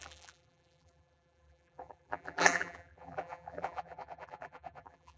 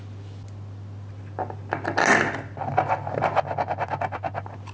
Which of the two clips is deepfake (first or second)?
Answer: first